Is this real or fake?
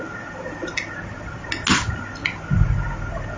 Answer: real